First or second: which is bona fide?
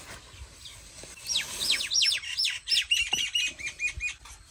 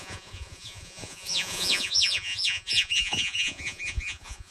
first